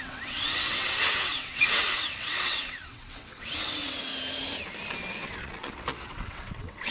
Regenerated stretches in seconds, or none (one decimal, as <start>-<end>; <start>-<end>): 0.0-4.1; 4.9-6.9